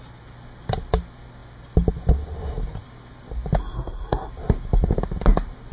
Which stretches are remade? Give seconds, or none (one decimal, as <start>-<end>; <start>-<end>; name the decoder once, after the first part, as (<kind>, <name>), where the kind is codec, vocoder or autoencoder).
3.6-4.3 (codec, SNAC)